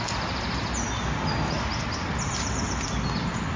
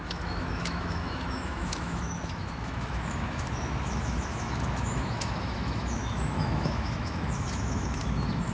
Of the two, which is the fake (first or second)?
second